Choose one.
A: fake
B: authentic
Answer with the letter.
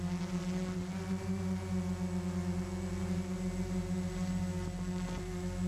B